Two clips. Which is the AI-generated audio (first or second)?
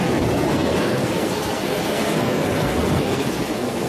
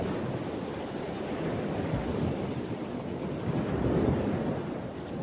first